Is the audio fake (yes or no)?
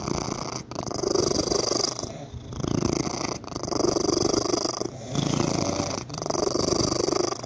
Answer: no